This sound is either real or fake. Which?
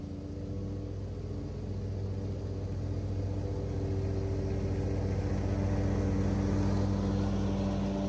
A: real